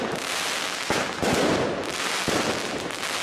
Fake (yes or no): no